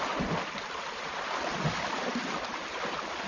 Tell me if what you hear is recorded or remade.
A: remade